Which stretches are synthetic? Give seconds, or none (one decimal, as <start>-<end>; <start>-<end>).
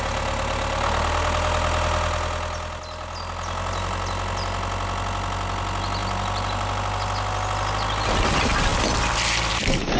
none